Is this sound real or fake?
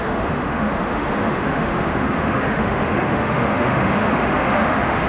fake